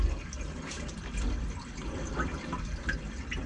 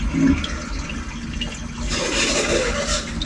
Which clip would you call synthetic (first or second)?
first